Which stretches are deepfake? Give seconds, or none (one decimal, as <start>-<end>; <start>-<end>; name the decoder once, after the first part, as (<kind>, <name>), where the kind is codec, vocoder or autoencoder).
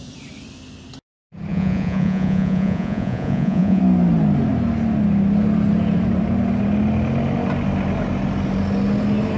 1.5-3.8 (vocoder, Vocos)